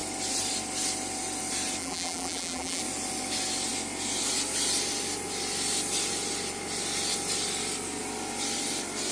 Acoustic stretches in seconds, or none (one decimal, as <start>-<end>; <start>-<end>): 0.0-1.8; 2.8-9.1